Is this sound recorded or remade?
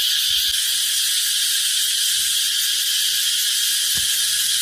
recorded